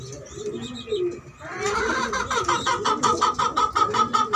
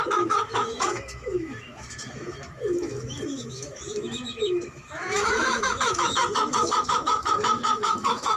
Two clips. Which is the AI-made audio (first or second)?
second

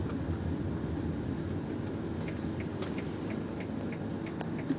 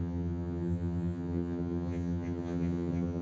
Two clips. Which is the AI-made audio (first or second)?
second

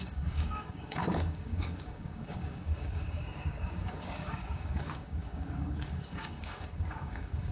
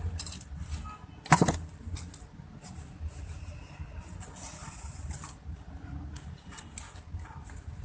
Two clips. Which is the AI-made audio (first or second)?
first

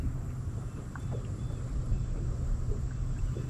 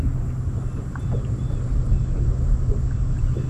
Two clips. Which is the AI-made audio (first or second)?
first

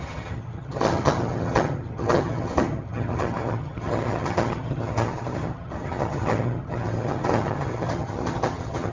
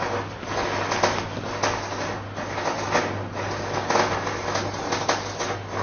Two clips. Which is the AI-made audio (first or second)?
first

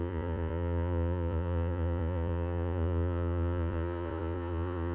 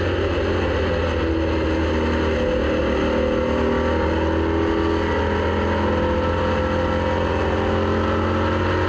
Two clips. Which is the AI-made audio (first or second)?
first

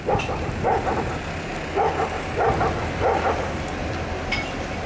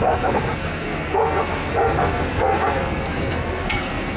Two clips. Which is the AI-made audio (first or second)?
second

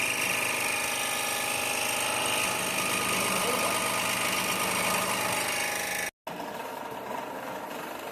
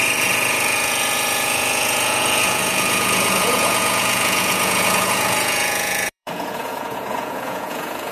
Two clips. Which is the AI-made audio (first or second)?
second